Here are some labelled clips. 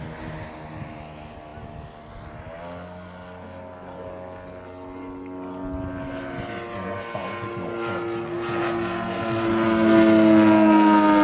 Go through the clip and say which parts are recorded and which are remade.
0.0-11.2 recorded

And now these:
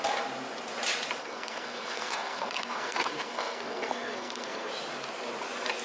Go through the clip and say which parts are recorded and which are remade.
0.0-1.2 recorded; 1.2-4.7 remade; 4.7-5.8 recorded

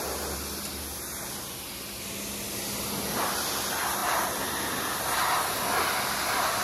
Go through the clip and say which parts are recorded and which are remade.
0.0-6.6 recorded

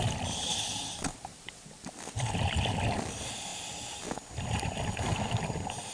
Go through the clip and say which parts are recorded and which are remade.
0.0-5.9 recorded

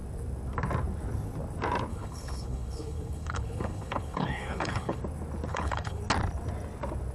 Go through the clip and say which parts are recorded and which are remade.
0.0-1.9 recorded; 1.9-5.0 remade; 5.0-5.5 recorded; 5.5-6.0 remade; 6.0-7.1 recorded

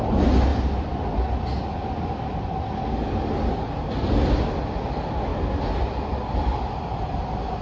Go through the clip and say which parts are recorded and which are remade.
0.0-7.6 recorded

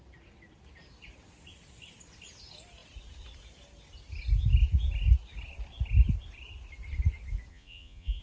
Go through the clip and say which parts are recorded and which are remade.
0.0-7.5 recorded; 7.5-8.2 remade

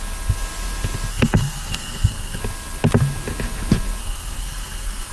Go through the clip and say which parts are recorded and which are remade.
0.0-1.1 recorded; 1.1-2.4 remade; 2.4-4.0 recorded; 4.0-5.1 remade